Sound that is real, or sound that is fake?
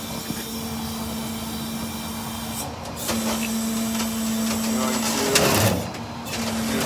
real